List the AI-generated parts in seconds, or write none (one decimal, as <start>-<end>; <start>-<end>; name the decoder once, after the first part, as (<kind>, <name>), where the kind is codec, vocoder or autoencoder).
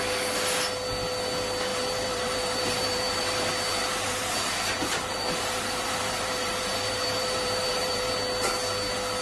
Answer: 1.7-3.4 (vocoder, BigVGAN v2); 3.8-8.1